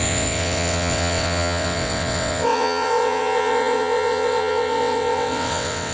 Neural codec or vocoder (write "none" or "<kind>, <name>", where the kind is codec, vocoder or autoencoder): vocoder, WaveNeXt